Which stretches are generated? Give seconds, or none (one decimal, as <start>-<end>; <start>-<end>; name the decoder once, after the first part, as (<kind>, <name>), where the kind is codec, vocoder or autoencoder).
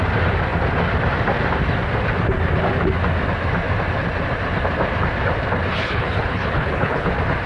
5.7-7.1 (codec, HILCodec)